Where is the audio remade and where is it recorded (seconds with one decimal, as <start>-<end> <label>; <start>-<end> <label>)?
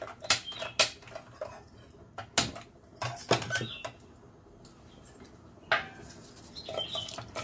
0.0-7.4 recorded